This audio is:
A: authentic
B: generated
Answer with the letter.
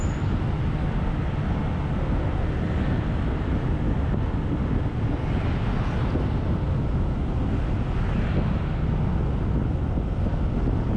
A